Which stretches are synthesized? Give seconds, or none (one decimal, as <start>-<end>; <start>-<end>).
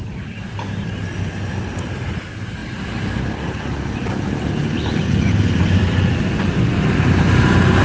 none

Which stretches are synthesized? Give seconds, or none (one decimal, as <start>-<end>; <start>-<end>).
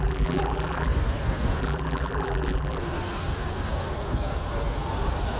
0.0-0.9; 1.6-2.8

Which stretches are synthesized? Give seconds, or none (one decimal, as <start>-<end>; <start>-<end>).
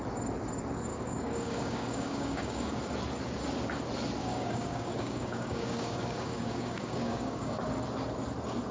0.9-2.8; 4.2-7.6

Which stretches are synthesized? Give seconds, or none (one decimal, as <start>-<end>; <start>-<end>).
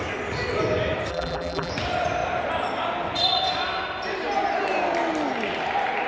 1.1-1.7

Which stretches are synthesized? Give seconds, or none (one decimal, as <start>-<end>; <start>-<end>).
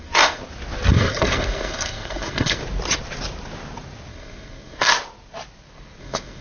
0.0-0.4; 0.9-2.6; 4.1-4.9; 6.0-6.4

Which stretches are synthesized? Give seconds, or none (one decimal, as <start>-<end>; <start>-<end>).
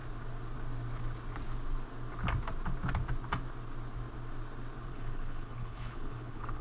4.9-6.6